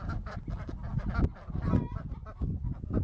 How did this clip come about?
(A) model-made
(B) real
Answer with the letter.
B